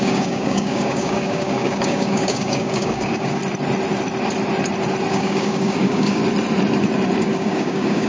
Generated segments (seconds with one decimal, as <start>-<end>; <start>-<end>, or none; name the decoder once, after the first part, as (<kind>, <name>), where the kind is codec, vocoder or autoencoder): 0.0-3.4 (codec, DAC); 5.1-6.2; 7.2-8.1